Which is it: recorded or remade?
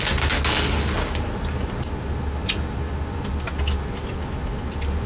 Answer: recorded